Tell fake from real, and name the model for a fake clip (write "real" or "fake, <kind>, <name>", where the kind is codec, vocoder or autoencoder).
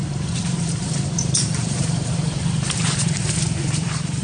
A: fake, vocoder, BigVGAN v2